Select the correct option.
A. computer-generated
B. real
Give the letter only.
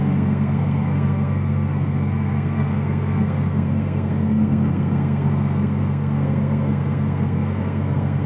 A